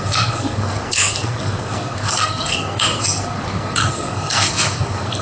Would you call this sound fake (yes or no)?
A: yes